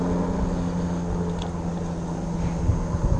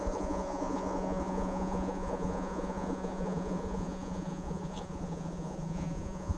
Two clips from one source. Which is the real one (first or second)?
first